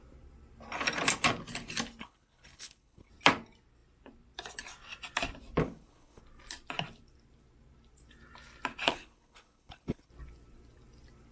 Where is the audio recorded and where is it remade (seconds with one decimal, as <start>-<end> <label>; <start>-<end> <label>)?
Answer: 0.0-2.0 recorded; 2.0-3.1 remade; 3.1-5.6 recorded; 5.6-6.2 remade; 6.2-8.9 recorded; 8.9-10.1 remade; 10.1-11.3 recorded